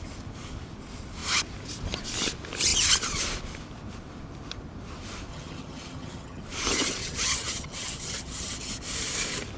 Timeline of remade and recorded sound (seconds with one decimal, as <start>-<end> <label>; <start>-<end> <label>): 0.0-5.3 recorded; 5.3-6.4 remade; 6.4-7.0 recorded; 7.0-8.7 remade; 8.7-9.6 recorded